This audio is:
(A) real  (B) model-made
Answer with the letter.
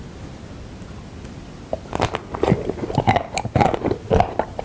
A